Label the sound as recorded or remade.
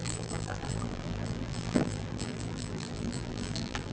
remade